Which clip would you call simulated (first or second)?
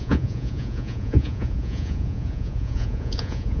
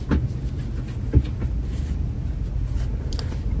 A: first